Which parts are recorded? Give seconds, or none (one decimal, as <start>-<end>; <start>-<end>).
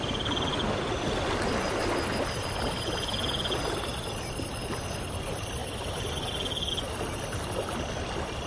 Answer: 0.0-8.5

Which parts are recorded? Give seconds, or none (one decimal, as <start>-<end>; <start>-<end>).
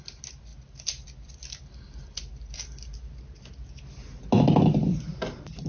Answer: 0.0-5.7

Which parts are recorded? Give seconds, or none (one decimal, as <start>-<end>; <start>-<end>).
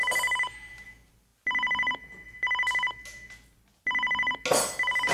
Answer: 0.0-5.1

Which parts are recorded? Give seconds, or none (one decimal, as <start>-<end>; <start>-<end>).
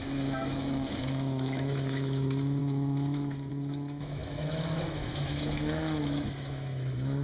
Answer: none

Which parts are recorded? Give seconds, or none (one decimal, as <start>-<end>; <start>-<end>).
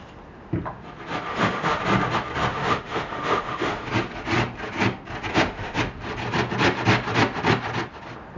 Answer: 0.0-1.3; 1.8-2.5; 3.9-5.3; 5.8-8.4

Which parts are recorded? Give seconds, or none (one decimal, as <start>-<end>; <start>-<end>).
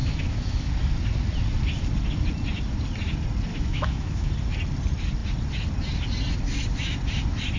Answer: 0.7-3.5; 4.3-7.6